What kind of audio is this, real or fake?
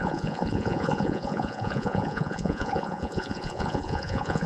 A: fake